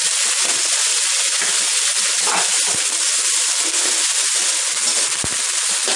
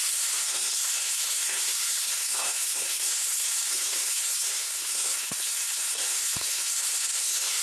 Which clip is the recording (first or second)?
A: first